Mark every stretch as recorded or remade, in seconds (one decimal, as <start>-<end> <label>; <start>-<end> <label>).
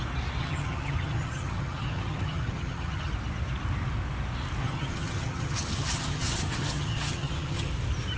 0.0-0.4 recorded; 0.4-3.1 remade; 3.1-4.6 recorded; 4.6-7.7 remade; 7.7-8.2 recorded